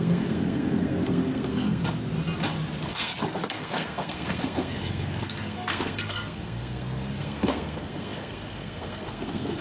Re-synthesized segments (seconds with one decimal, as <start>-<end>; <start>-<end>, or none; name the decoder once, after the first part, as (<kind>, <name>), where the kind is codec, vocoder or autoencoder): 0.0-1.8 (codec, SNAC); 2.9-9.6